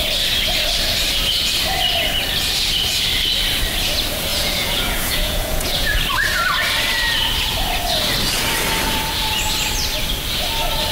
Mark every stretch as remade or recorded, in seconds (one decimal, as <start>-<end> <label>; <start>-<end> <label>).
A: 0.0-4.3 recorded; 4.3-6.0 remade; 6.0-10.9 recorded